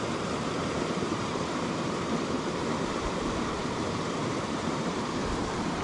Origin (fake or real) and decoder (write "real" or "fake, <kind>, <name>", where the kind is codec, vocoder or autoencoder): fake, vocoder, BigVGAN v2